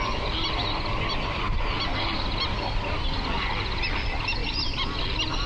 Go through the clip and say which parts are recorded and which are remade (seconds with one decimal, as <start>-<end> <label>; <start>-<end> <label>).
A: 0.0-5.5 recorded